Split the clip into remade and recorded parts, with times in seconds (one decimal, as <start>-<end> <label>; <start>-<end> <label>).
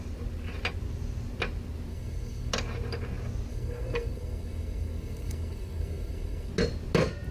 0.0-1.9 recorded; 1.9-2.5 remade; 2.5-3.5 recorded; 3.5-6.5 remade; 6.5-7.3 recorded